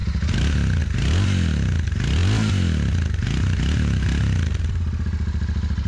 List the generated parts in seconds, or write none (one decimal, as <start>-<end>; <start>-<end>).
none